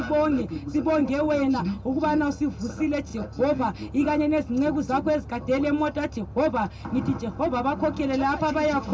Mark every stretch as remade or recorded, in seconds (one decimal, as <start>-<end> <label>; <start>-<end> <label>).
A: 0.0-1.0 recorded; 1.0-1.6 remade; 1.6-8.9 recorded